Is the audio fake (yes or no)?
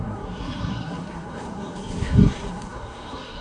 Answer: yes